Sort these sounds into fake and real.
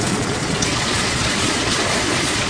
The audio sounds fake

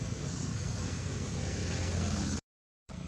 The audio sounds fake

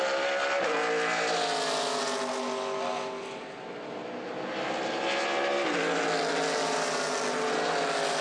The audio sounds real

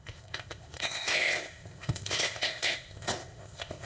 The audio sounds fake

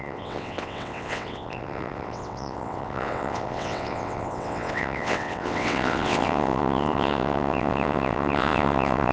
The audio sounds fake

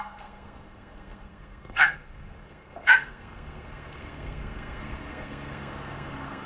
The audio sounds fake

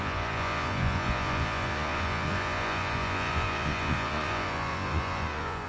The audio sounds fake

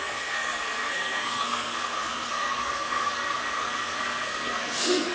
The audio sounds fake